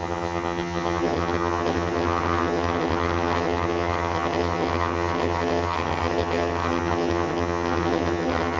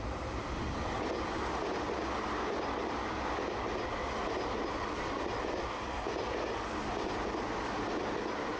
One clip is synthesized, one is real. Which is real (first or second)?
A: second